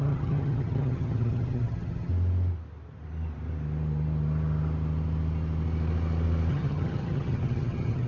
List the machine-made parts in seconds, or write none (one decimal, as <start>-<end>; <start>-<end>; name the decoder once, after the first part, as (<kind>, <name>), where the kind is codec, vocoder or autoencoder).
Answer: 0.0-2.1 (vocoder, HiFi-GAN); 6.5-8.1